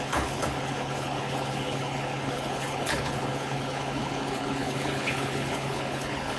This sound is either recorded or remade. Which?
remade